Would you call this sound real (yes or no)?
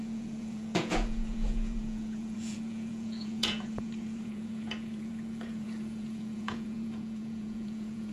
no